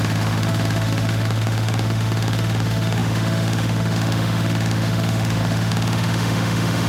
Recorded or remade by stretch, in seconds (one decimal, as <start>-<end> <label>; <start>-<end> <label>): 0.0-6.9 remade